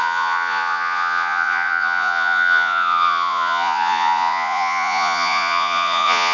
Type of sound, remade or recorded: remade